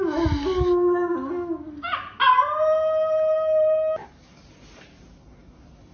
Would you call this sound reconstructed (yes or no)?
no